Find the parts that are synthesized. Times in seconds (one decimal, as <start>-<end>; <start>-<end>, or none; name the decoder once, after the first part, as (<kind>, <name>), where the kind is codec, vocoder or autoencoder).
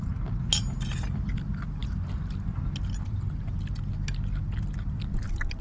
none